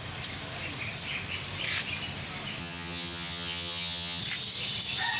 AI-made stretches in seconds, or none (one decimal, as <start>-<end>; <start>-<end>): 2.6-4.2

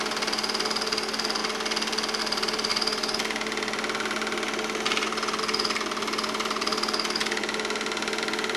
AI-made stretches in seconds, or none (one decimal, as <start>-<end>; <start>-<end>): none

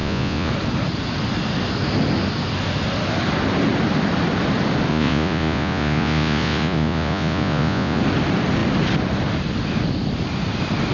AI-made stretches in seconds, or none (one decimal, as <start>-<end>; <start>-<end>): 0.0-0.5; 4.9-8.0

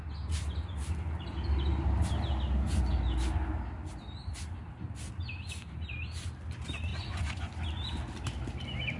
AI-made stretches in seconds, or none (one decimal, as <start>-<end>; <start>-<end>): 6.9-7.5

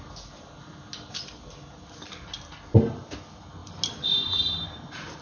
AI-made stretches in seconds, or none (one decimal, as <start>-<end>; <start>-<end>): none

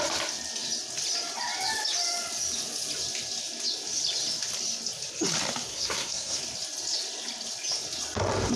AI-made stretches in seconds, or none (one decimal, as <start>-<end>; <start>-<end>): 5.7-6.4

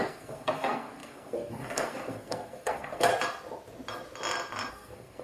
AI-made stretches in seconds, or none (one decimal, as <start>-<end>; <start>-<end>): 0.0-3.1; 4.7-5.2